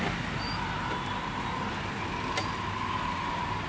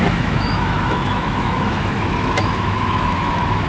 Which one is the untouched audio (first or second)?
first